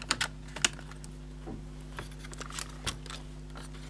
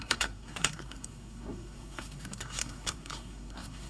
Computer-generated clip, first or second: second